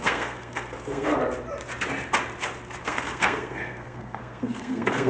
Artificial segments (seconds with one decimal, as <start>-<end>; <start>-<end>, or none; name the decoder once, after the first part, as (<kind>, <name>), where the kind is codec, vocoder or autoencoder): 0.0-1.2 (codec, SNAC); 2.8-5.1